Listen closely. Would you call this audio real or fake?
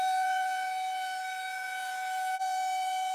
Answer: fake